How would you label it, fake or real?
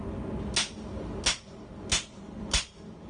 real